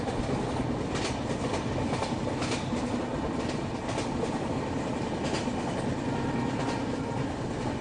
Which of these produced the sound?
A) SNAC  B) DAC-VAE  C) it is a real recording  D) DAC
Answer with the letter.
C